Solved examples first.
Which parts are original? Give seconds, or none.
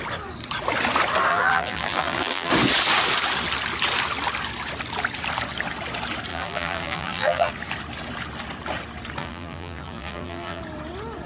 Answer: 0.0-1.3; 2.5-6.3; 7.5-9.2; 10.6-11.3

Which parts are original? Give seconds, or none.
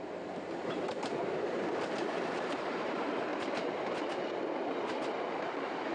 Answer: 3.3-5.4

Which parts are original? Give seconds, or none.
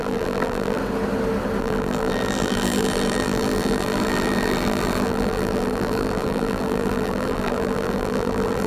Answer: 0.8-1.6